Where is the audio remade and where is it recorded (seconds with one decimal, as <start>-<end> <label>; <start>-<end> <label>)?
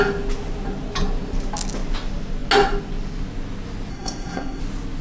0.0-3.9 recorded; 3.9-4.6 remade; 4.6-5.0 recorded